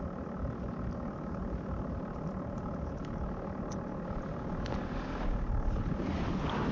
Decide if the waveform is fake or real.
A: real